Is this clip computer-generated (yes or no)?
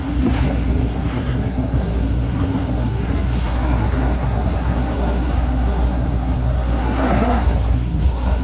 yes